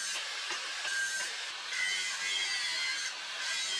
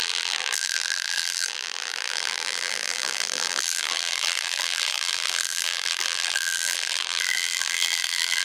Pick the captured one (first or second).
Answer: first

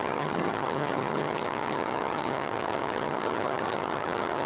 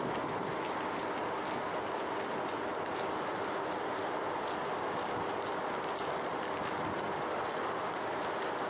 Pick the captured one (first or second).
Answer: second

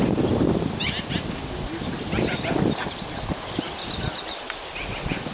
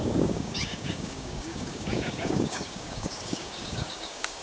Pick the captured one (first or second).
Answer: first